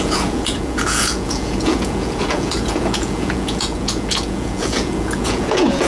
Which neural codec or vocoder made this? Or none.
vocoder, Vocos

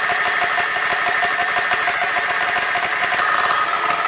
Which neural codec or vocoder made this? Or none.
none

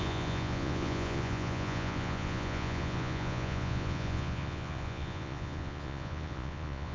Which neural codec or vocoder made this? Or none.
vocoder, Vocos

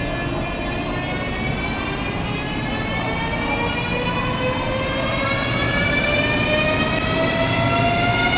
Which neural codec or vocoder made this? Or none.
none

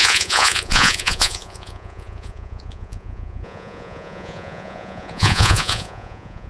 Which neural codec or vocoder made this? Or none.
vocoder, Vocos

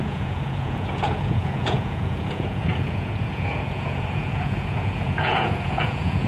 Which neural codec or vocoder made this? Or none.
vocoder, Vocos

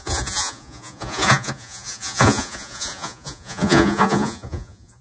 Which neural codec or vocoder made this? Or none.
vocoder, Vocos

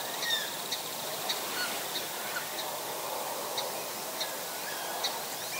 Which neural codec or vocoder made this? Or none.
none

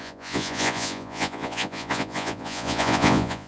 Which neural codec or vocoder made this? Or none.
vocoder, Vocos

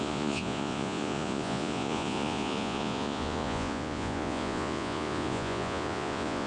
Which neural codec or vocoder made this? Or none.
vocoder, Vocos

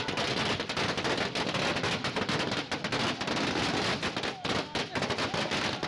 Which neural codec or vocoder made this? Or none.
none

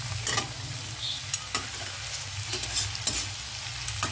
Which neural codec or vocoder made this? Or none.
none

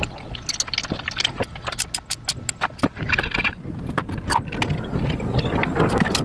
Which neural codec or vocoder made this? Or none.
none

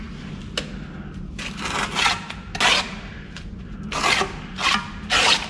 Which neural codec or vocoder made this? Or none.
none